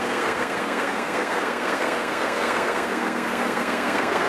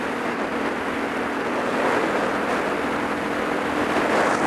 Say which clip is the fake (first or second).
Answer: first